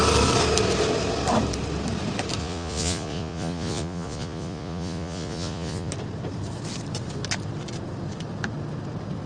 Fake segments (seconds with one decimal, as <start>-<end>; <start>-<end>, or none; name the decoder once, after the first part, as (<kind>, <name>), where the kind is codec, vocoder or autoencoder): 2.4-5.9 (vocoder, Vocos)

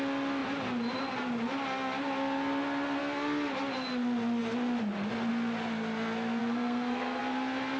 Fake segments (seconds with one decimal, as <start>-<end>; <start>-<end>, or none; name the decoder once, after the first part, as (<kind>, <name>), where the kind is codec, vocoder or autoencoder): 6.4-7.2 (codec, SNAC)